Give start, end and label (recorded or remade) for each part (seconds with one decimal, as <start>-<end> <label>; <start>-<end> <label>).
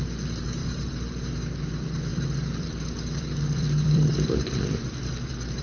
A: 0.0-0.6 recorded; 0.6-1.6 remade; 1.6-2.1 recorded; 2.1-5.6 remade